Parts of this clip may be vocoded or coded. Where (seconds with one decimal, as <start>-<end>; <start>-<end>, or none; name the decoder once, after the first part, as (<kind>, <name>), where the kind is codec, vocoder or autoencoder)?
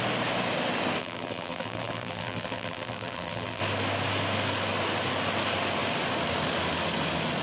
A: 1.0-3.6 (vocoder, BigVGAN v2)